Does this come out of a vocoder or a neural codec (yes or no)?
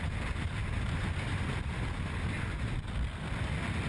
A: no